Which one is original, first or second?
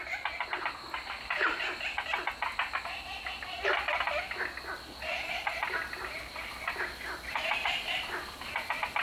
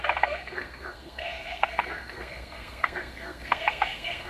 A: first